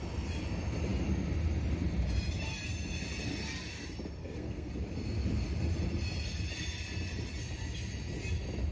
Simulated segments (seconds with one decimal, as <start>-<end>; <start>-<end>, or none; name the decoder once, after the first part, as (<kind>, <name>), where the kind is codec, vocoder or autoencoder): 4.2-4.7 (codec, SNAC)